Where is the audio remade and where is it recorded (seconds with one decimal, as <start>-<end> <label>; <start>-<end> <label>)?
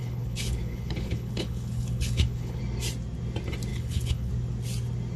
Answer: 0.0-2.6 remade; 2.6-3.7 recorded; 3.7-4.3 remade; 4.3-5.2 recorded